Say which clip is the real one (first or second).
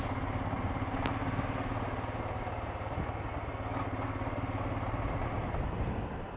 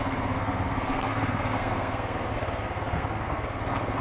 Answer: first